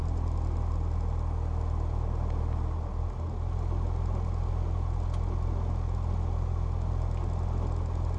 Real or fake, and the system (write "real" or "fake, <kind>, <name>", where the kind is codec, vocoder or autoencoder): real